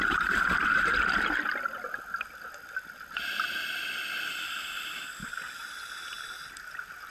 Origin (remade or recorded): remade